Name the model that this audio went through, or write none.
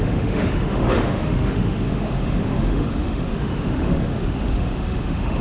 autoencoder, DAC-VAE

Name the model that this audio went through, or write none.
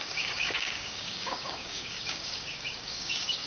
codec, DAC